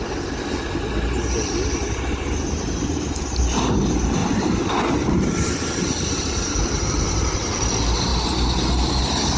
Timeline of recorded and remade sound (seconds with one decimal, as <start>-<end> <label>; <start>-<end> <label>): 0.0-9.4 recorded